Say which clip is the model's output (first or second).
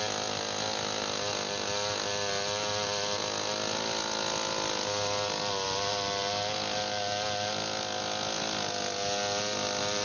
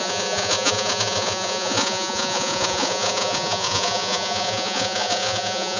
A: second